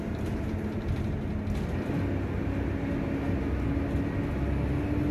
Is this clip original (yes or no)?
yes